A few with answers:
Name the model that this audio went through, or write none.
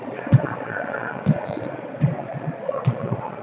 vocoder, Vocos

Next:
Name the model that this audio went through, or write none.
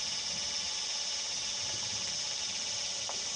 none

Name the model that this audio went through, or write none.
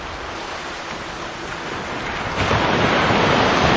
none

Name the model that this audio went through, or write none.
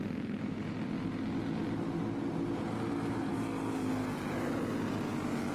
none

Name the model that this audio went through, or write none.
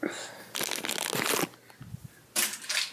none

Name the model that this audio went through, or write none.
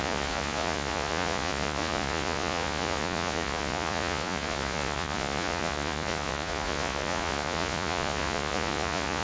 vocoder, Vocos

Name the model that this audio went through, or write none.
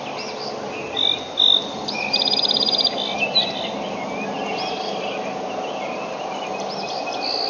none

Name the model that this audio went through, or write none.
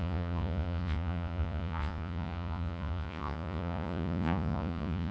vocoder, Vocos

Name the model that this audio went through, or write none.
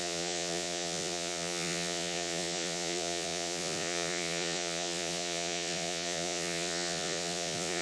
vocoder, Vocos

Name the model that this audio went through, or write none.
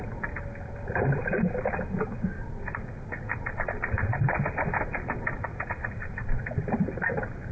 none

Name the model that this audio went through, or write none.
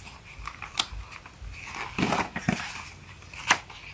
none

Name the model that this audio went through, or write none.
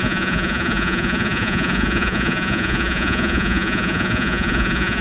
vocoder, Vocos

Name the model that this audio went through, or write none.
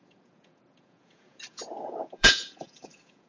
vocoder, Vocos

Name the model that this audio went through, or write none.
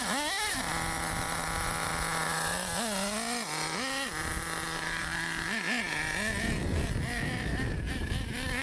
none